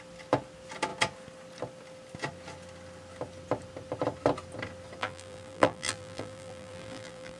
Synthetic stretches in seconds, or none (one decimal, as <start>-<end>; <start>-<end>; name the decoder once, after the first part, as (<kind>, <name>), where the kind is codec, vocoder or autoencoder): 5.0-7.4 (vocoder, BigVGAN v2)